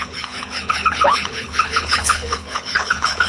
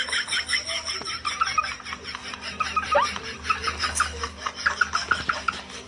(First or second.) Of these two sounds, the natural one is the second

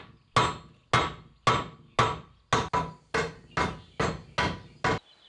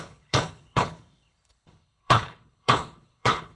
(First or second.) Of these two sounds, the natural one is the first